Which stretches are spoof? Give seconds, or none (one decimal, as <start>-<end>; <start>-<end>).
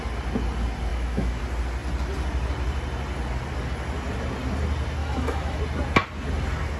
0.9-1.4; 5.0-5.6